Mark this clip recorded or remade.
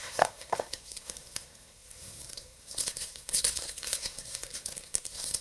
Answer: remade